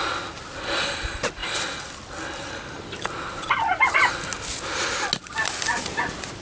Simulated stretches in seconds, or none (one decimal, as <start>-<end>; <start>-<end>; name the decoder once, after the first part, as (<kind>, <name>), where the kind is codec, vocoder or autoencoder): none

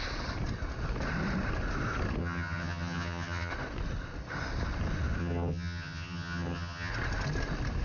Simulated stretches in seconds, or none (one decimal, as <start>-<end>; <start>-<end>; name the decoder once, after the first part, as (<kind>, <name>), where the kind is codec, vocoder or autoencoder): 2.2-3.5 (vocoder, HiFi-GAN); 5.2-6.9

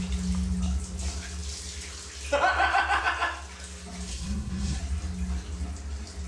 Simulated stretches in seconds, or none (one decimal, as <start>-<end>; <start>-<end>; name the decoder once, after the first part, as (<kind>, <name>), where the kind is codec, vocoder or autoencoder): 4.1-4.8 (codec, SNAC)

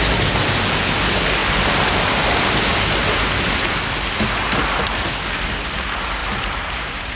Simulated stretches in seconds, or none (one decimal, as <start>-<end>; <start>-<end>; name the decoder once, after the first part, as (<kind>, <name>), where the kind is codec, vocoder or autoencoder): 1.4-2.4 (vocoder, BigVGAN v2); 6.2-7.2

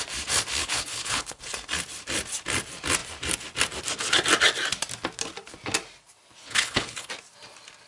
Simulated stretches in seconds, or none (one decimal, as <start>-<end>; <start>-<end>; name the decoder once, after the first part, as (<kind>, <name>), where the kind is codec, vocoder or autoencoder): 0.6-1.4 (codec, HILCodec); 6.4-7.1

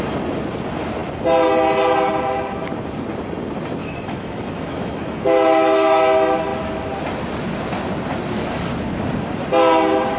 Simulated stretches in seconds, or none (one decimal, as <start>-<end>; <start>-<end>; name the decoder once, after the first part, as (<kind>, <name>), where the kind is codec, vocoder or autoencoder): 3.8-6.0 (autoencoder, DAC-VAE)

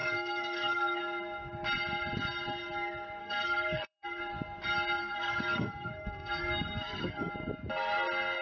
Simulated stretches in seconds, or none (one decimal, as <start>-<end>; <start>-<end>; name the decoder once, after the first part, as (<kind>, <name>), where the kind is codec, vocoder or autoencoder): 0.0-1.0 (codec, SNAC); 3.2-4.2; 5.0-7.3

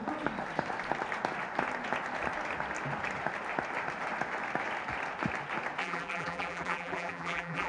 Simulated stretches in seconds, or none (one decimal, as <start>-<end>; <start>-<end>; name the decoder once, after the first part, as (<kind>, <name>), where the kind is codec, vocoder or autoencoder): 5.8-7.7 (vocoder, BigVGAN v2)